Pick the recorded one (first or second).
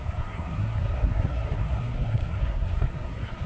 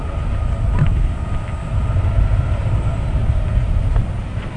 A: second